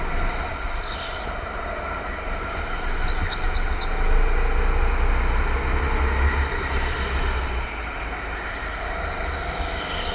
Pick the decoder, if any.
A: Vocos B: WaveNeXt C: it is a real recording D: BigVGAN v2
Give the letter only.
C